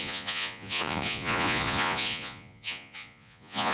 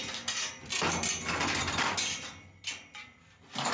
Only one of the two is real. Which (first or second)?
second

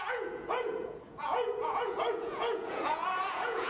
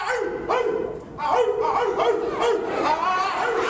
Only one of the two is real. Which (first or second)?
second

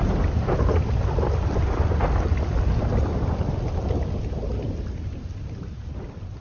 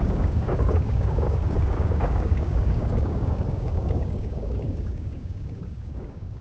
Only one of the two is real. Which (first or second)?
first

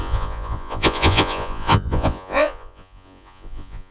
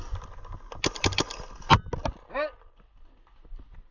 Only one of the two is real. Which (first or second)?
second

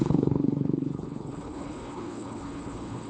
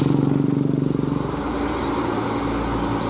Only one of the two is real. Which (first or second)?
second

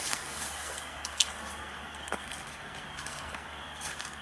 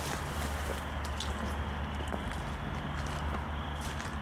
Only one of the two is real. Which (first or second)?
second